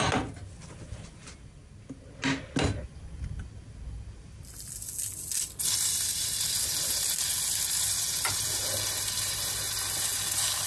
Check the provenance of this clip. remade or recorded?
recorded